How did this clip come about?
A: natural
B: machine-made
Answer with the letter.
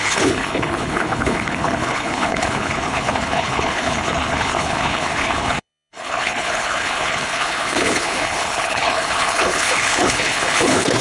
B